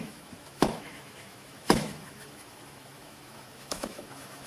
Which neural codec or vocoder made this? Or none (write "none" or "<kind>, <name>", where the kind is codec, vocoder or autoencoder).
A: autoencoder, DAC-VAE